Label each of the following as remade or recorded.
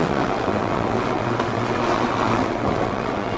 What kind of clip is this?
remade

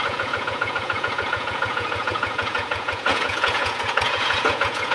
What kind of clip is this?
remade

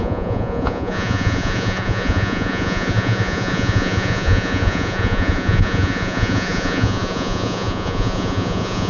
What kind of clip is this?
remade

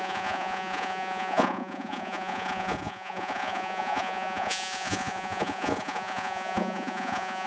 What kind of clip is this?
remade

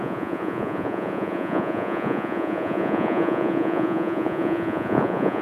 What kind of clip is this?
remade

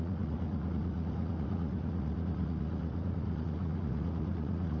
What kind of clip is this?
remade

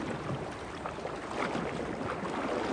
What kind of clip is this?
recorded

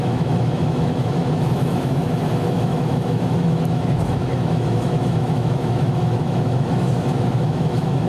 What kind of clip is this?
remade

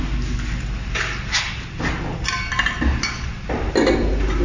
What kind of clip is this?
recorded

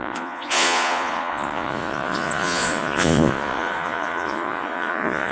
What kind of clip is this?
remade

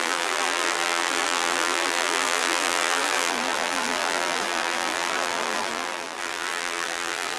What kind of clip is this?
remade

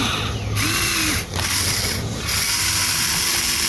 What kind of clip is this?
recorded